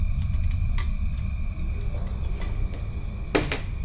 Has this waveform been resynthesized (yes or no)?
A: no